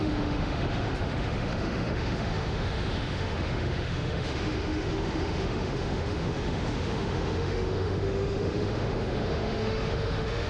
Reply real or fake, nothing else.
fake